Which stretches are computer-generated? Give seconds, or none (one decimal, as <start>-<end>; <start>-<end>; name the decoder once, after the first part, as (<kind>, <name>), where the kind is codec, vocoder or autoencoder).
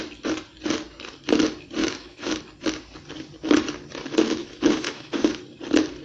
1.8-2.4 (autoencoder, DAC-VAE); 4.4-5.4